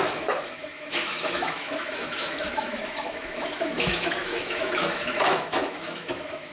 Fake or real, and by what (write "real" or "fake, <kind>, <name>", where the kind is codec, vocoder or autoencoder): fake, autoencoder, DAC-VAE